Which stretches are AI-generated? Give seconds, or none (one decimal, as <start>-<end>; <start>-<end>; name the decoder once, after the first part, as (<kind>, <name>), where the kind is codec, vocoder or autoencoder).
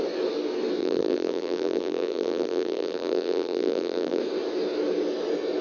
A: 0.8-4.2 (vocoder, BigVGAN v2)